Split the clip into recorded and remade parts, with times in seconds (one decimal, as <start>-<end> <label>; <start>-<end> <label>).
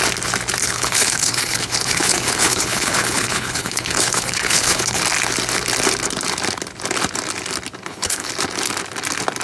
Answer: 0.0-0.6 recorded; 0.6-5.0 remade; 5.0-7.8 recorded; 7.8-8.3 remade; 8.3-9.4 recorded